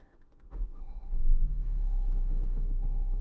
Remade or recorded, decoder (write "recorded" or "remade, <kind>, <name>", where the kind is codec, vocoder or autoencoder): remade, autoencoder, DAC-VAE